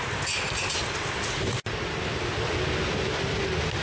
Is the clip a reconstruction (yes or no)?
no